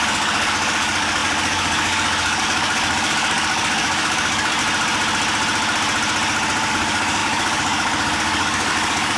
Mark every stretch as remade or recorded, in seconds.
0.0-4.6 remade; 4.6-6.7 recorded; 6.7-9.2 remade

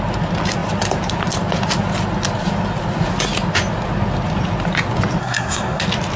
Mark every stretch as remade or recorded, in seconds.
0.0-5.2 recorded; 5.2-5.8 remade; 5.8-6.2 recorded

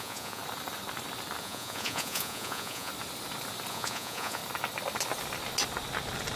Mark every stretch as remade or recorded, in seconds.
0.0-0.4 remade; 0.4-1.4 recorded; 1.4-2.9 remade; 2.9-3.7 recorded; 3.7-4.4 remade; 4.4-6.4 recorded